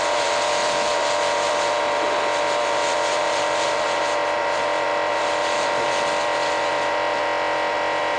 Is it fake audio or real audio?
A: real